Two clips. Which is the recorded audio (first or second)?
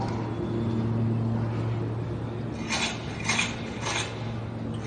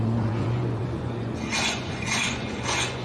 first